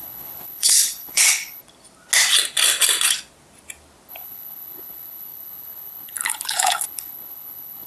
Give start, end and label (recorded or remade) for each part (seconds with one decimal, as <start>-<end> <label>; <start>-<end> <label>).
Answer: 0.0-1.6 remade; 1.6-4.1 recorded; 4.1-7.9 remade